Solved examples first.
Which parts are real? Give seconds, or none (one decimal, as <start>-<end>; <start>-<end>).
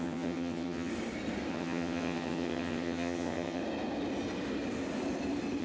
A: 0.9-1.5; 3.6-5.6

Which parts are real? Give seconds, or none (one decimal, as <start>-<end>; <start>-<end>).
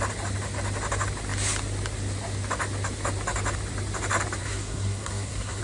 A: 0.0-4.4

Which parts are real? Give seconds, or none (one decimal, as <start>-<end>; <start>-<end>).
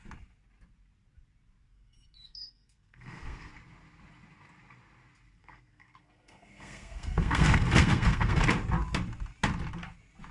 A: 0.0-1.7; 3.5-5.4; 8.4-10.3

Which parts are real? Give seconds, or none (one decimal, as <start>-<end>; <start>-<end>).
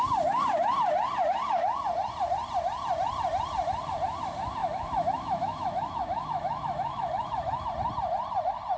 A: 0.0-4.6; 7.7-8.8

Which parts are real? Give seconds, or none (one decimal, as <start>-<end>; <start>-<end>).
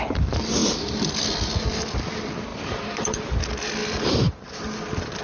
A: 0.0-0.6; 1.2-2.5; 3.2-3.8; 4.6-5.2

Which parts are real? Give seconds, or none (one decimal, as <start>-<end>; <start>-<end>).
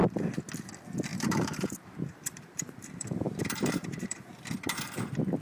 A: 0.0-1.1; 4.3-5.4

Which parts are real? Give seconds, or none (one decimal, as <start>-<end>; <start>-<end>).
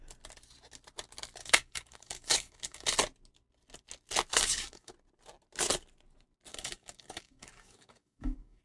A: 0.0-1.4; 2.9-4.3; 4.9-6.5